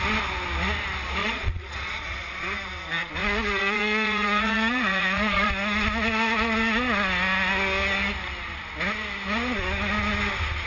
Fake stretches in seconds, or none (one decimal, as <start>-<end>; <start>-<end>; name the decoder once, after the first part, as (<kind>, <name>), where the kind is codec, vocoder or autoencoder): 1.2-2.4 (vocoder, Vocos); 3.2-5.5